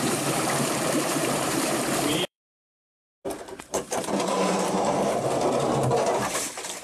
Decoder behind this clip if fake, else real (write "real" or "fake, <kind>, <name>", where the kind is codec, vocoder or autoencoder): fake, vocoder, BigVGAN v2